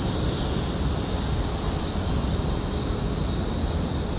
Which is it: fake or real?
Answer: real